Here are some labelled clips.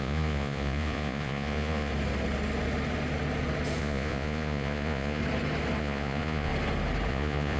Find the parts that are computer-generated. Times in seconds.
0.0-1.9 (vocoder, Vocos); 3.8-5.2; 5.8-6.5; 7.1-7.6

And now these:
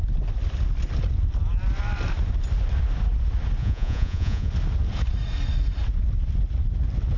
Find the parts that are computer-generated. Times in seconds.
3.6-4.5 (vocoder, Vocos)

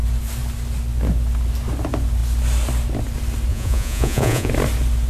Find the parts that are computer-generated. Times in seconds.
3.5-4.5 (vocoder, Vocos)

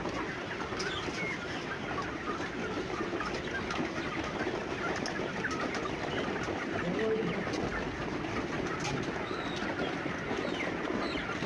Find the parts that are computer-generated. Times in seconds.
none

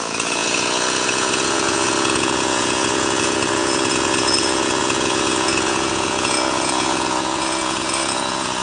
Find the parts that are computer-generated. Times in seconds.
0.0-8.6 (vocoder, Vocos)

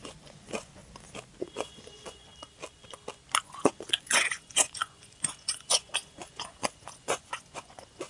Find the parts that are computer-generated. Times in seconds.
0.0-0.8 (vocoder, Vocos); 1.4-2.3; 3.4-8.1

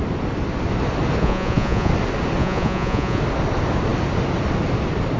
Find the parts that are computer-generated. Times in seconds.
1.2-1.9 (vocoder, Vocos); 2.4-3.2

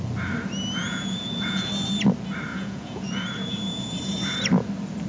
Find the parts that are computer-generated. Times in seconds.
0.8-1.7 (vocoder, Vocos); 2.5-4.0